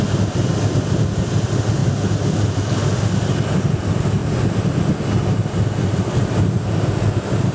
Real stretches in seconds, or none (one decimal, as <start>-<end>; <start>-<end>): 0.0-7.5